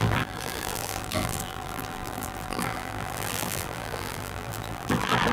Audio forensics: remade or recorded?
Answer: remade